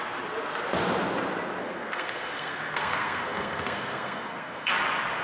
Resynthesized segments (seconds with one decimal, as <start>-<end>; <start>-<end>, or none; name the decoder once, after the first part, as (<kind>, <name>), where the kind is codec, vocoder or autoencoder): 1.6-4.7 (codec, SNAC)

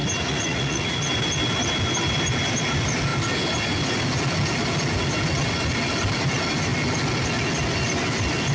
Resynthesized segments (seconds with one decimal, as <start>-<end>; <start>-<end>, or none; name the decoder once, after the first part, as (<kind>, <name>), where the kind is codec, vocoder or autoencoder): 0.0-1.1 (vocoder, Vocos)

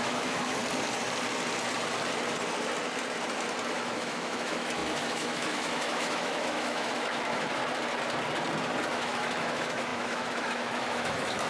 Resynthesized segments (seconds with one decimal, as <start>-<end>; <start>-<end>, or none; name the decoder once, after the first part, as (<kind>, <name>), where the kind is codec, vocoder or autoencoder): 0.0-0.6 (autoencoder, DAC-VAE); 3.7-7.6; 8.9-11.5

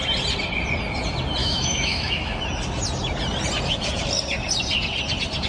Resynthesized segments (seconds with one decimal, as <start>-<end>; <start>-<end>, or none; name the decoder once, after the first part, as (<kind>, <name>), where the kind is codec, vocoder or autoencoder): 1.4-2.4 (autoencoder, DAC-VAE)

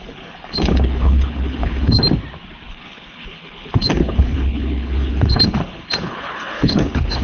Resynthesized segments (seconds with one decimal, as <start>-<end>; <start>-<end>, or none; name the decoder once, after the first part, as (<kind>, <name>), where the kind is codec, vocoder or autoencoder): 0.0-2.0 (codec, HILCodec); 2.7-7.2

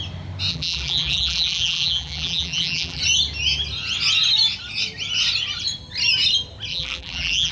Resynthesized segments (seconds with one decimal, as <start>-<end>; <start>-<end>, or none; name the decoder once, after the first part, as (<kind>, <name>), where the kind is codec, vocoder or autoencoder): 0.5-3.0 (vocoder, BigVGAN v2); 6.7-7.5

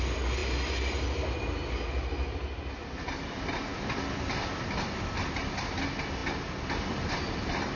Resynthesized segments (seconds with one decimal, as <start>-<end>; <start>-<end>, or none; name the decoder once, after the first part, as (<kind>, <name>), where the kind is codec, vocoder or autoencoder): none